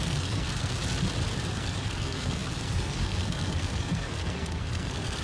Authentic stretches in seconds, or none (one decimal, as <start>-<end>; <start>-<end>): 0.8-1.5